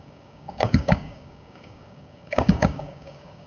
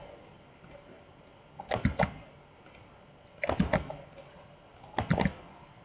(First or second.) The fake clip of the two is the first